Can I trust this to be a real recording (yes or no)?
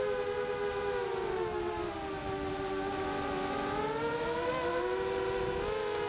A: yes